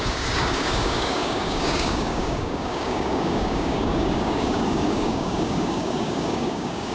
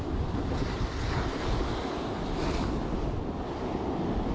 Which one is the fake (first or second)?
first